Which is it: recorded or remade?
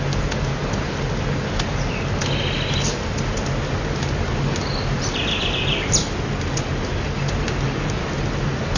recorded